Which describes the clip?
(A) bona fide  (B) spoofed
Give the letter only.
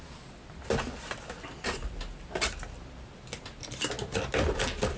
A